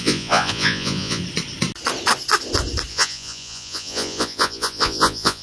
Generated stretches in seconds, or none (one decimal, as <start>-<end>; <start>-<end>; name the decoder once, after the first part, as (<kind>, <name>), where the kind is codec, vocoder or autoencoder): 0.0-1.2 (vocoder, Vocos); 2.9-5.4